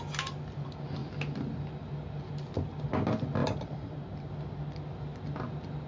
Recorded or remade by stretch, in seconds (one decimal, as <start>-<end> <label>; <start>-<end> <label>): 0.0-3.4 recorded; 3.4-4.3 remade; 4.3-5.9 recorded